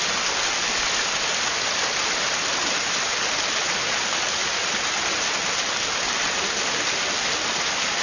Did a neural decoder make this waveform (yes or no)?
no